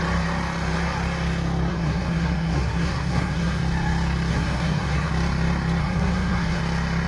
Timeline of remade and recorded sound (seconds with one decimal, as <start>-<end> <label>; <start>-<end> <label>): 0.0-1.7 recorded; 1.7-3.6 remade; 3.6-4.3 recorded; 4.3-5.1 remade; 5.1-5.8 recorded; 5.8-6.6 remade; 6.6-7.1 recorded